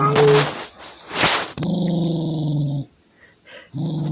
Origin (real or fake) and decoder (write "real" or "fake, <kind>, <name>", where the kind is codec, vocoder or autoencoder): real